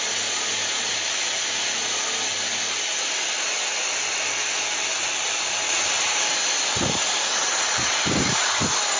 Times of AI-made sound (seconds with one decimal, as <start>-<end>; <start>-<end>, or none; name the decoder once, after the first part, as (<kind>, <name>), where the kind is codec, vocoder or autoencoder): 0.6-1.5 (vocoder, BigVGAN v2); 4.9-8.6